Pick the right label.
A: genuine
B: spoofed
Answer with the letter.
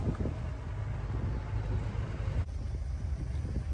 A